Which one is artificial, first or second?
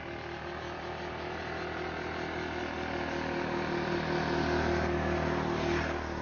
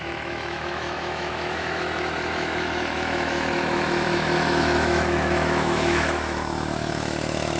second